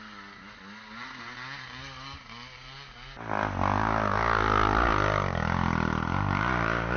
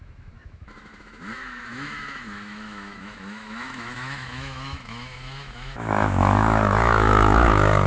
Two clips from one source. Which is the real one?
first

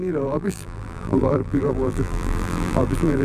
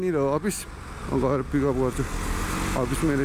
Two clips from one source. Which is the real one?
second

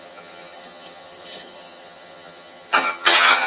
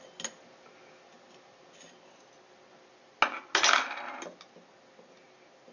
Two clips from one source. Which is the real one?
second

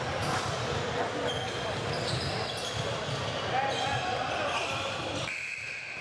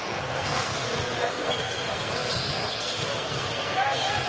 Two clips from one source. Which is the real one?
first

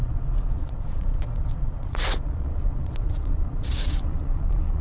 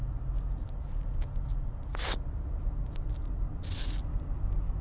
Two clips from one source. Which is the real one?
second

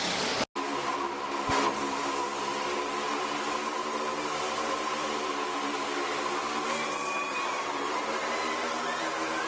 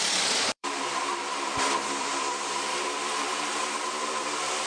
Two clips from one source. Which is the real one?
first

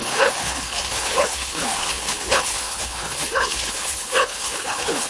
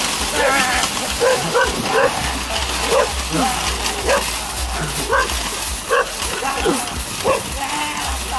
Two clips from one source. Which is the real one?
second